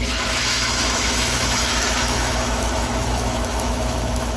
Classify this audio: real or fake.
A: fake